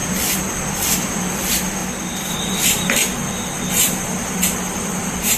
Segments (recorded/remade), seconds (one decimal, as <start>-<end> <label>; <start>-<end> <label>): 0.0-1.8 remade; 1.8-2.3 recorded; 2.3-3.0 remade; 3.0-3.7 recorded; 3.7-5.4 remade